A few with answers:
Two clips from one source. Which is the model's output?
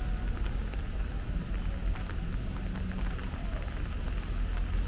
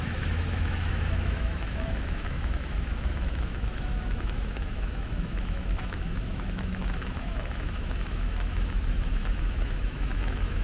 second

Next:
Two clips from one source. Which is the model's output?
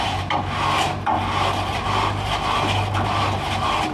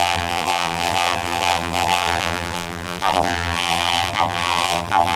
second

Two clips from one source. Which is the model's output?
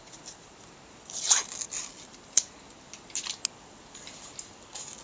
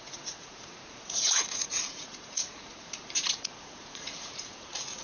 second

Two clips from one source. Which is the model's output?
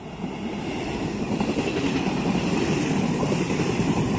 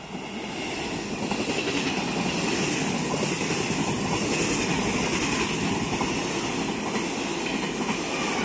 first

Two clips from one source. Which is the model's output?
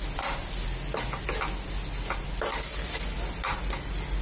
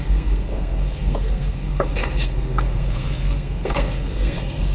second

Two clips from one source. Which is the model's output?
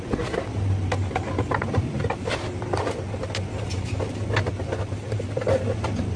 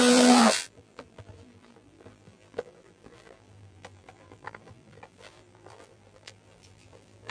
second